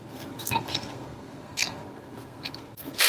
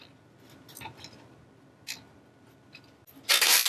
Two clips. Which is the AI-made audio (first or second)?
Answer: first